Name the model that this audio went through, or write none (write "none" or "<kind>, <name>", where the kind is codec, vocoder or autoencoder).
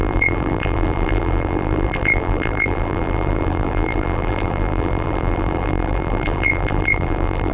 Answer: vocoder, BigVGAN v2